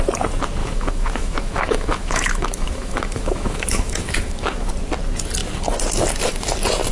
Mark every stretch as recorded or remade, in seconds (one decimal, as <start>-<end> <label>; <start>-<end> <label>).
0.0-0.6 recorded; 0.6-4.7 remade; 4.7-6.9 recorded

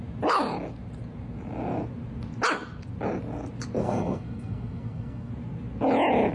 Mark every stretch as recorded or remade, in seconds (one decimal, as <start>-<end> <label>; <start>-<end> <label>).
0.0-3.8 recorded; 3.8-5.3 remade; 5.3-6.3 recorded

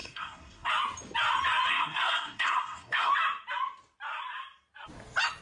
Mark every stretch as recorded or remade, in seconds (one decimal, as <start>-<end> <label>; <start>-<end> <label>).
0.0-0.7 remade; 0.7-1.7 recorded; 1.7-3.1 remade; 3.1-5.4 recorded

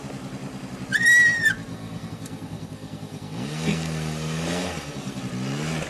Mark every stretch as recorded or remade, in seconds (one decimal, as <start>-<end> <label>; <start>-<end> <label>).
0.0-1.7 recorded; 1.7-5.2 remade; 5.2-5.9 recorded

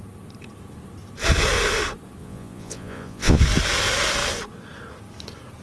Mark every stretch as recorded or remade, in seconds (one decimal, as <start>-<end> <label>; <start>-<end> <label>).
0.0-2.2 recorded; 2.2-3.4 remade; 3.4-5.6 recorded